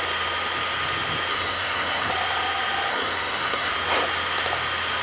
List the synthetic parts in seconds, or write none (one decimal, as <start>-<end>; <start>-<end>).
1.3-2.1; 2.9-3.7